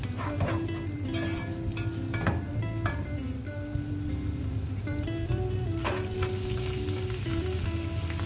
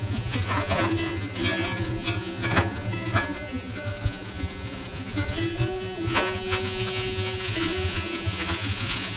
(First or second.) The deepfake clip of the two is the second